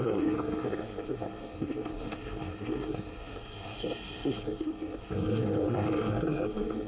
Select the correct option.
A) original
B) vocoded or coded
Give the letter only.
B